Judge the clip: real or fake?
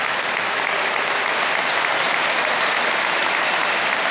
real